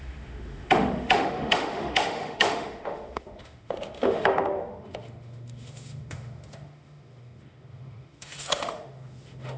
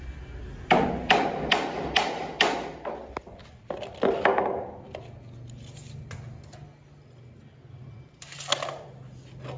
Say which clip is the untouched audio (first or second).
second